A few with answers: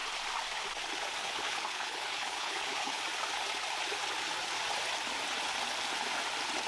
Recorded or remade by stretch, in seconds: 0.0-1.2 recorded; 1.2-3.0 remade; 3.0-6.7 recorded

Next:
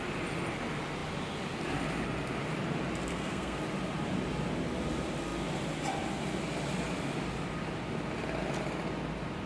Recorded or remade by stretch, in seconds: 0.0-3.1 recorded; 3.1-3.6 remade; 3.6-9.5 recorded

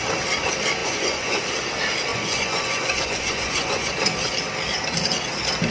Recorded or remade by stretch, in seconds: 0.0-0.8 recorded; 0.8-1.4 remade; 1.4-2.1 recorded; 2.1-3.9 remade; 3.9-5.7 recorded

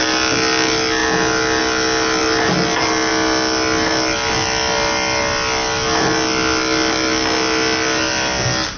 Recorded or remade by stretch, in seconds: 0.0-8.8 recorded

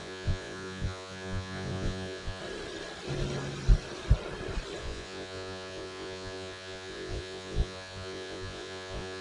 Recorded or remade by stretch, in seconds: 0.0-2.4 remade; 2.4-4.8 recorded; 4.8-9.2 remade

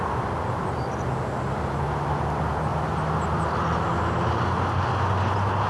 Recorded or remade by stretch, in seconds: 0.0-5.7 recorded

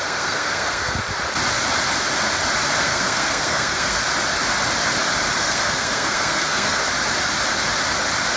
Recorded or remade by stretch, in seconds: 0.0-1.0 remade; 1.0-2.8 recorded; 2.8-4.0 remade; 4.0-5.4 recorded; 5.4-6.8 remade; 6.8-8.4 recorded

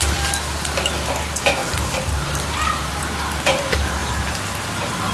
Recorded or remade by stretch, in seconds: 0.0-1.6 recorded; 1.6-3.0 remade; 3.0-5.1 recorded